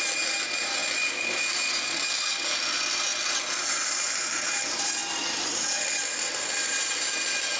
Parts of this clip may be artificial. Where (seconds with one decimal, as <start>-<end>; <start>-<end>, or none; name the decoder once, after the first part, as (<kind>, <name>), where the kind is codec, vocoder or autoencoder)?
5.0-6.8 (vocoder, BigVGAN v2)